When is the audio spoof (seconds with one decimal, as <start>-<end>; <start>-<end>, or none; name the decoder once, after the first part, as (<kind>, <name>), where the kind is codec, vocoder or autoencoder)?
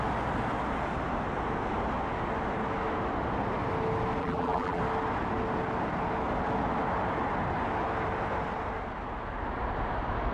4.2-4.8 (vocoder, BigVGAN v2)